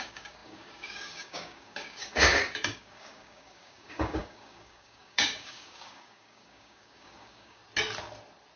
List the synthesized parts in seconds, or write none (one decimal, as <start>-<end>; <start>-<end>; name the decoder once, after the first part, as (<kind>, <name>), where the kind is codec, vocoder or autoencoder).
0.0-7.6 (codec, DAC)